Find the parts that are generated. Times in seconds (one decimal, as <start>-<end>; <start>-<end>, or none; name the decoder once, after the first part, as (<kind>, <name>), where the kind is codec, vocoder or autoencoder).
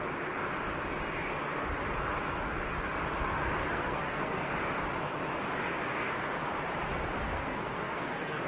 3.7-4.5 (codec, SNAC); 7.2-8.5